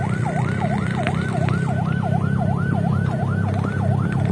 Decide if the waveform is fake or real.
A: real